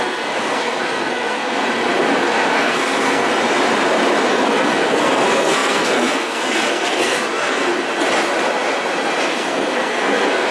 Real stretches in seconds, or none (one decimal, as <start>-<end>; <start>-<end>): 1.6-2.2; 3.3-4.3; 7.7-9.3